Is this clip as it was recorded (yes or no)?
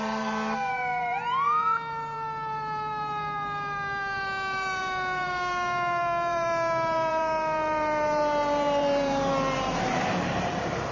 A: no